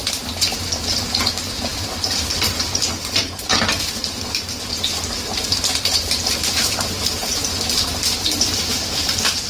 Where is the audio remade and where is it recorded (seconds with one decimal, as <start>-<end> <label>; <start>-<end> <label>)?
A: 0.0-9.5 remade